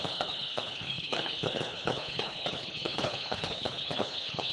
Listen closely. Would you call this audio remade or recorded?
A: remade